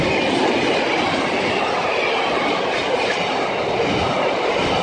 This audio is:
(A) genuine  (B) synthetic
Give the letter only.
A